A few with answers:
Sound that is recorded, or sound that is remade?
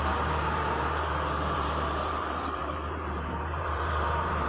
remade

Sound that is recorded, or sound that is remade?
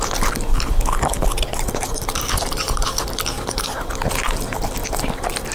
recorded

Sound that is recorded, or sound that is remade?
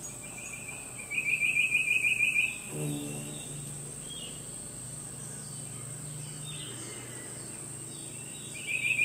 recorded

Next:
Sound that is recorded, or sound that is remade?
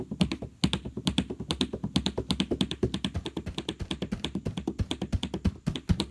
recorded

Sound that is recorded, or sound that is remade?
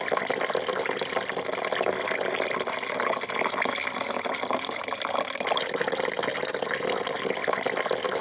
recorded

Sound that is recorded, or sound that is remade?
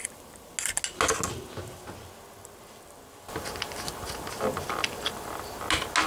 recorded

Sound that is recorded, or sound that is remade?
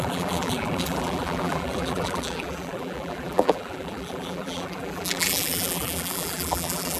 remade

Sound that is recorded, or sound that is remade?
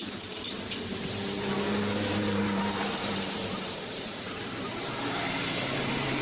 remade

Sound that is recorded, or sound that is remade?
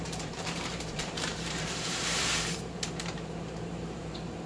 remade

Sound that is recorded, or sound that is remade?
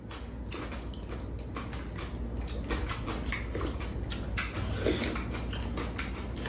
recorded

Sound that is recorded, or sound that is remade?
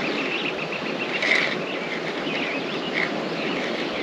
recorded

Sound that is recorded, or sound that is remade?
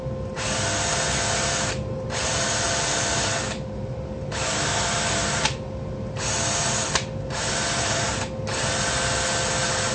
recorded